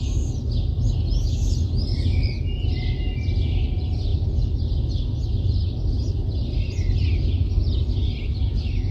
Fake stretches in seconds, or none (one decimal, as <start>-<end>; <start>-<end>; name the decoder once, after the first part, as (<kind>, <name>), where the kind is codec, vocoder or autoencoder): none